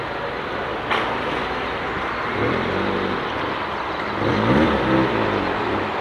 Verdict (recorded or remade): recorded